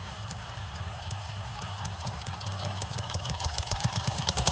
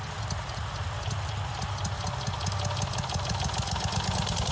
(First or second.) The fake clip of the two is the first